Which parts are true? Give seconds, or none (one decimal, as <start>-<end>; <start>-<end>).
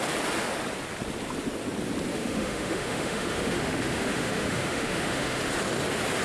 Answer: 0.0-2.1; 5.4-6.2